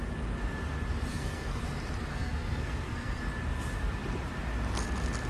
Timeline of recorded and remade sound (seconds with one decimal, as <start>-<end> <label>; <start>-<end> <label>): 0.0-1.1 recorded; 1.1-1.6 remade; 1.6-2.1 recorded; 2.1-3.2 remade; 3.2-5.3 recorded